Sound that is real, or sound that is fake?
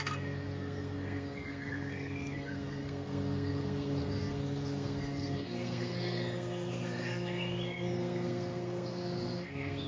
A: fake